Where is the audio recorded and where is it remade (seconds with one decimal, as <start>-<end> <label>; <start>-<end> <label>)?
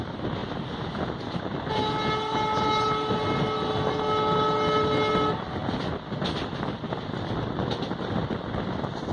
0.0-9.1 recorded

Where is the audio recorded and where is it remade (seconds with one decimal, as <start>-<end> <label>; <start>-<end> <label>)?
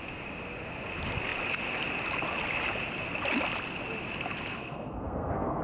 0.0-4.5 recorded; 4.5-5.6 remade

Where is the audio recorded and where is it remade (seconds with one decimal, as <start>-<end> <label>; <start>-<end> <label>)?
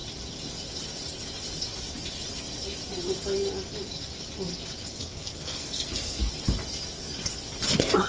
0.0-5.0 recorded; 5.0-6.3 remade; 6.3-8.1 recorded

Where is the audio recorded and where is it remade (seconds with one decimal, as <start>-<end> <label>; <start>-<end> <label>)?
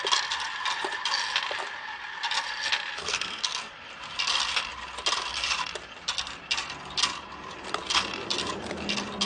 0.0-3.0 recorded; 3.0-3.7 remade; 3.7-9.3 recorded